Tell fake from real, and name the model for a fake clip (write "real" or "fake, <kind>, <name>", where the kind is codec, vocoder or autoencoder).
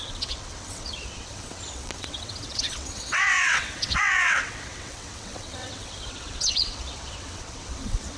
fake, vocoder, WaveNeXt